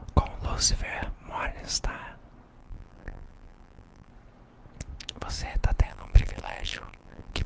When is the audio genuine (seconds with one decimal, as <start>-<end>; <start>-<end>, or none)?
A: 0.0-2.6; 4.1-5.9